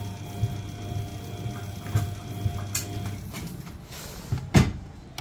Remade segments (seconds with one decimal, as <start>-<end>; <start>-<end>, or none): none